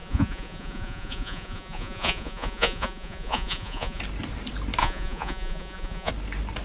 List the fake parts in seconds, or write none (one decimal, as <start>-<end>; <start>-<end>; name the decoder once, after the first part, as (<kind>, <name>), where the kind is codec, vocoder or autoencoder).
0.0-4.0 (vocoder, Vocos); 4.8-6.1